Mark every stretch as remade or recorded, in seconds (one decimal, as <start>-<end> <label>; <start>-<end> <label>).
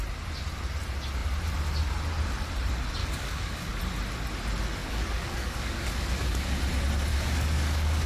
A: 0.0-3.0 recorded; 3.0-3.8 remade; 3.8-4.8 recorded; 4.8-6.6 remade; 6.6-7.1 recorded; 7.1-8.1 remade